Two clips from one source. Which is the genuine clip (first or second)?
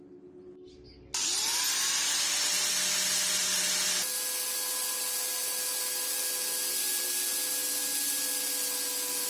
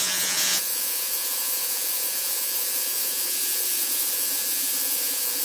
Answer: first